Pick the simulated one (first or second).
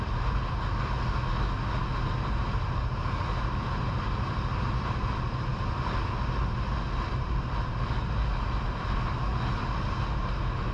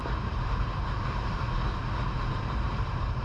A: second